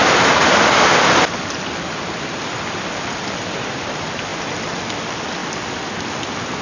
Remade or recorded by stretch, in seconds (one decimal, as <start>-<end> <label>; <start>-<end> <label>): 0.0-3.8 recorded; 3.8-5.4 remade; 5.4-6.6 recorded